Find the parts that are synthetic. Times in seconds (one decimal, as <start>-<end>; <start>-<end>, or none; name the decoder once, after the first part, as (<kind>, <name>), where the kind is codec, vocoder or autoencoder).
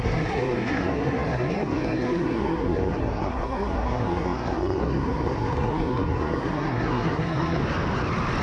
0.0-7.6 (codec, SNAC)